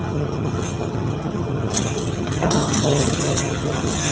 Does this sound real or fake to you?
fake